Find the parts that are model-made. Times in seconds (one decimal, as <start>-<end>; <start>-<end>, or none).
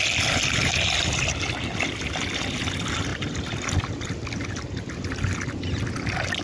none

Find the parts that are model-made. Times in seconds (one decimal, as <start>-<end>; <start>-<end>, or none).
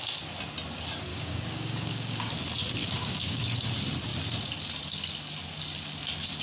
1.1-2.3; 2.8-3.4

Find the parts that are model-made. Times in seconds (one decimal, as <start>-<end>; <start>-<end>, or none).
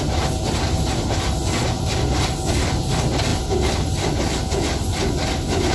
none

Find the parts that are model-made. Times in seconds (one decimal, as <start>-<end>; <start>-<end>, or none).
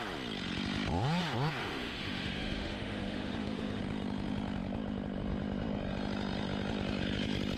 1.6-3.8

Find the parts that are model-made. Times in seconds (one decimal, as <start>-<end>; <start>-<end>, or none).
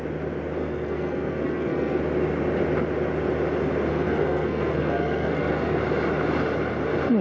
0.6-2.0; 3.9-5.8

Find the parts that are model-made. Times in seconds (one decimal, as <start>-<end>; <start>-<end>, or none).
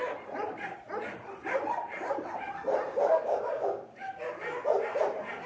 3.1-4.1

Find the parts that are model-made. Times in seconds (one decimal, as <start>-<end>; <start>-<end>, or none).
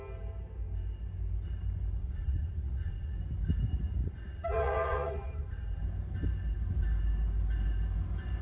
2.0-3.2; 4.0-5.8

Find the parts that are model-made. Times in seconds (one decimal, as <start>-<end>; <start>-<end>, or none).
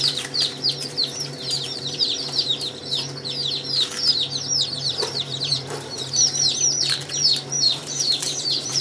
0.0-2.8; 4.7-6.2; 6.8-8.8